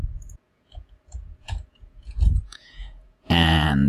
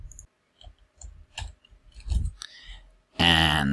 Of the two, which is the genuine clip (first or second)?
second